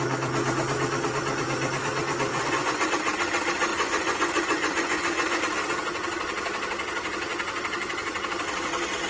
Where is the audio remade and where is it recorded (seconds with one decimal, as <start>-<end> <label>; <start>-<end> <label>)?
0.0-2.3 recorded; 2.3-2.9 remade; 2.9-3.7 recorded; 3.7-5.4 remade; 5.4-9.1 recorded